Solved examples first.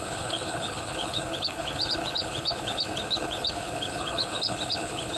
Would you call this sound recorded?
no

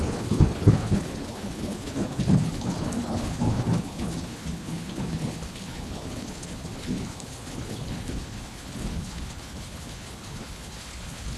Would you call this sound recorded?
no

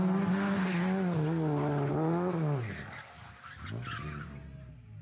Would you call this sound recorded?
yes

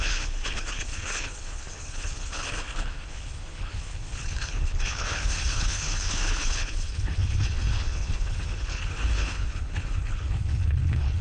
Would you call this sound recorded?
no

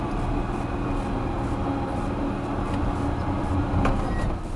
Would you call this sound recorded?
yes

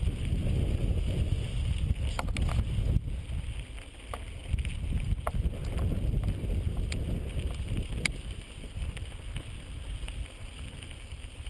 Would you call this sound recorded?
yes